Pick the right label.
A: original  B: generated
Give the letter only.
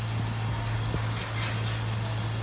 A